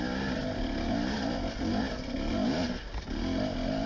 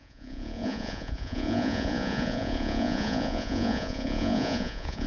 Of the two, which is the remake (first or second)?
second